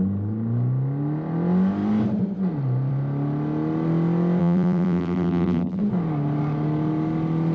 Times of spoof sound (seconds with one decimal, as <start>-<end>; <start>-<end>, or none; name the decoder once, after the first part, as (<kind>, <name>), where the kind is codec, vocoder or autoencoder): 4.4-5.8 (vocoder, BigVGAN v2)